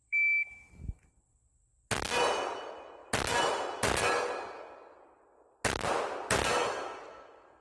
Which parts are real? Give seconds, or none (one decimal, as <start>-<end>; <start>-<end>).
0.7-7.6